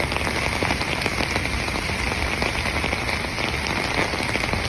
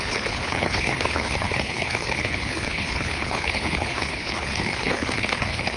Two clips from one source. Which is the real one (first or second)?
first